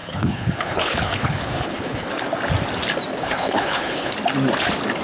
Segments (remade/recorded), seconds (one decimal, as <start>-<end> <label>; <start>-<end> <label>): 0.0-2.1 remade; 2.1-3.1 recorded; 3.1-4.1 remade; 4.1-5.0 recorded